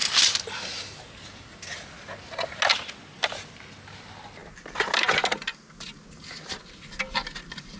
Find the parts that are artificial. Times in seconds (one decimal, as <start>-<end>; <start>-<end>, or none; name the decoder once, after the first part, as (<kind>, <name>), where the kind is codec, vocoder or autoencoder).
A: none